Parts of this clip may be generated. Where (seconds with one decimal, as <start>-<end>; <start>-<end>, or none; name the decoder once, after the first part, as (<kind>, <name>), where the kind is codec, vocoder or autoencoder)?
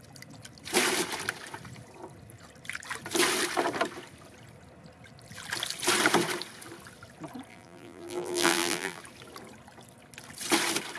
7.5-9.0 (vocoder, BigVGAN v2)